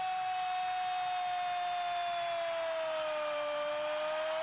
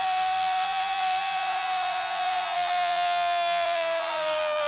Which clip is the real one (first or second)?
first